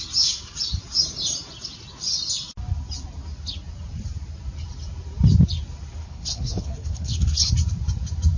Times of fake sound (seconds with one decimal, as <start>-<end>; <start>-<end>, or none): 6.0-7.5